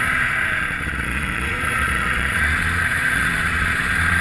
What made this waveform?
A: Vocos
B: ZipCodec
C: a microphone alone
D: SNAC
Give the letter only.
A